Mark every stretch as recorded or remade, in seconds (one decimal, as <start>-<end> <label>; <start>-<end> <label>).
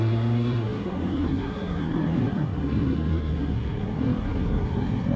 0.0-5.2 remade